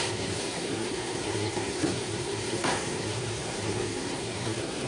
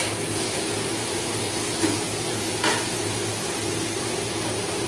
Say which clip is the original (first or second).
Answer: second